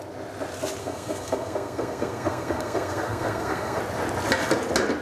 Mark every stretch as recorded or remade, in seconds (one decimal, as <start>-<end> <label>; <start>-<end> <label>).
0.0-0.8 recorded; 0.8-3.8 remade; 3.8-5.0 recorded